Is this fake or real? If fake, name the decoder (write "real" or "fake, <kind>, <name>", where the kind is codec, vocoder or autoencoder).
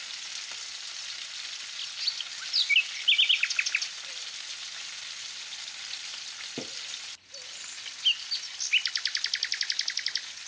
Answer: real